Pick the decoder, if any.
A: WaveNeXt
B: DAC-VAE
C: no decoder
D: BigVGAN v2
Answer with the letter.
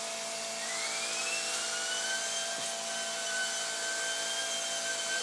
C